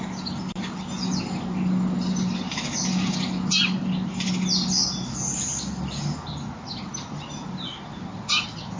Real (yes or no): yes